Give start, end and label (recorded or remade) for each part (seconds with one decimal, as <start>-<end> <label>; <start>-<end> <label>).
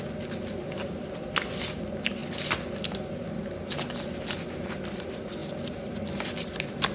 0.0-6.9 recorded